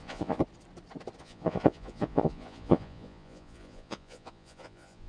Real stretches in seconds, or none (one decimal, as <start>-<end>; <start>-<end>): 0.4-1.2